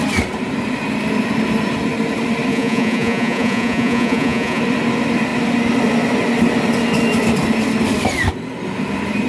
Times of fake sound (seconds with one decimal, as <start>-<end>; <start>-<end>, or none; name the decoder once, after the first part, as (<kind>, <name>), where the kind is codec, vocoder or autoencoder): 2.5-4.6 (vocoder, Vocos)